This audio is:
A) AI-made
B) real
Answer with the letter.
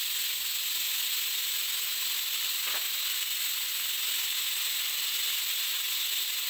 B